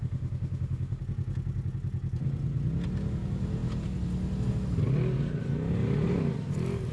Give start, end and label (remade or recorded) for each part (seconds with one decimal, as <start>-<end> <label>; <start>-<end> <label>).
0.0-1.0 remade; 1.0-6.9 recorded